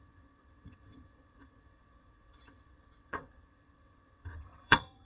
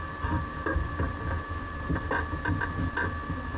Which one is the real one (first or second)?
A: second